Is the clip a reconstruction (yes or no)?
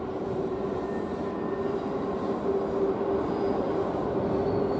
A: no